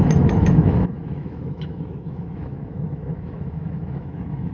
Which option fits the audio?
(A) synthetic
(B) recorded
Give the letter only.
A